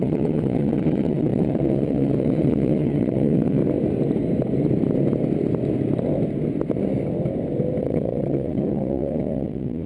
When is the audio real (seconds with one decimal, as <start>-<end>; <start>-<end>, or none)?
3.6-7.8